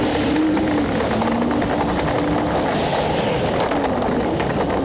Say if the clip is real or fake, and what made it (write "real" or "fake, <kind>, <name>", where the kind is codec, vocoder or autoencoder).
real